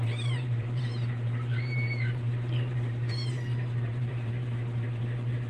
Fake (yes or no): yes